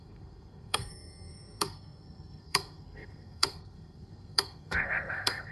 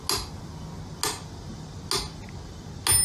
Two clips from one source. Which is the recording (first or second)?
second